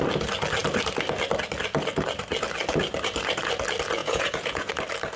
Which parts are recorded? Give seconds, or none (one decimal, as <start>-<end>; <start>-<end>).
0.0-4.0; 4.7-5.2